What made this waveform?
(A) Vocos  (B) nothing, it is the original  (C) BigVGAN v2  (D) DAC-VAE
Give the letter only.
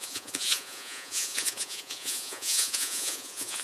A